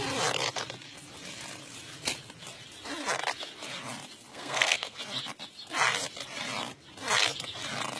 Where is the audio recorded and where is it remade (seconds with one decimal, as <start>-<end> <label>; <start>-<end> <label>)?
0.0-4.3 recorded; 4.3-5.0 remade; 5.0-8.0 recorded